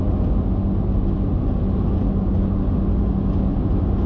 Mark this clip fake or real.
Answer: real